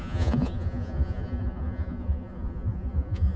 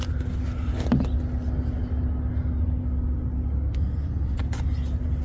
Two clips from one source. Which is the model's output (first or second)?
first